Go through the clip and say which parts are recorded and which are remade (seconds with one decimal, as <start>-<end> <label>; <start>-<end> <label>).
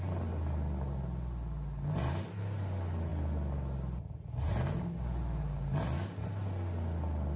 0.0-7.4 recorded